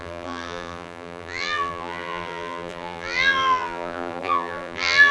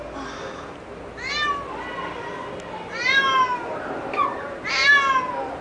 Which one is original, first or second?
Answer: second